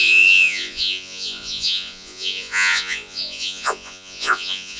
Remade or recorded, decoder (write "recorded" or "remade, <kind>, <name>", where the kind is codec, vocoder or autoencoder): remade, vocoder, Vocos